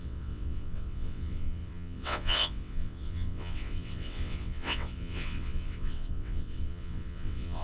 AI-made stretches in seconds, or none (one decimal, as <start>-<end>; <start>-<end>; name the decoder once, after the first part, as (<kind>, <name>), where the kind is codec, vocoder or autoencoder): 0.0-7.6 (vocoder, WaveNeXt)